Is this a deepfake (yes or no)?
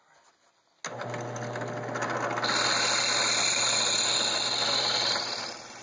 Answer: no